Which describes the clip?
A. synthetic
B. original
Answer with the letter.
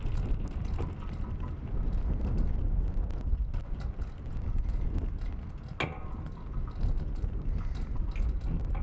B